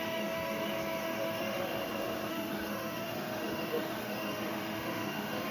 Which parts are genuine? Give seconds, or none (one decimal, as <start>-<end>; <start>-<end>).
1.8-2.3